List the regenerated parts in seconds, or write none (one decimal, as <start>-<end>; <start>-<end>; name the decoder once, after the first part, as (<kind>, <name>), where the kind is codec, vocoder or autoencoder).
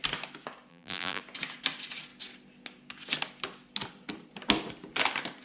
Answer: 0.7-1.2 (vocoder, BigVGAN v2)